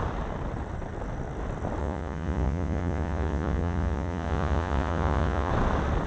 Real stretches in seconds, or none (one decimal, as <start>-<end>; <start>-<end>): 0.0-1.8; 5.5-6.1